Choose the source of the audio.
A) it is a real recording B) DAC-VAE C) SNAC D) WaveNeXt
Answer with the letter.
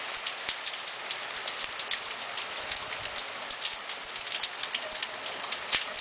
A